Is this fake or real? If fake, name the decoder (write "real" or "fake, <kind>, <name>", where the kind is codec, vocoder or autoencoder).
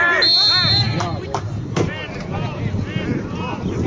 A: real